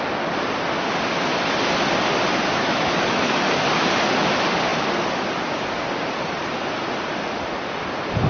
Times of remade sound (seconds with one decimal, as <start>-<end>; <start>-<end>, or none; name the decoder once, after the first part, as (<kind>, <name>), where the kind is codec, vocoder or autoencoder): 2.6-3.5 (autoencoder, DAC-VAE)